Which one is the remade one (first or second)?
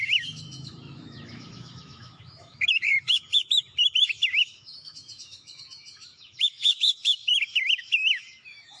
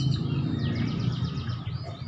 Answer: first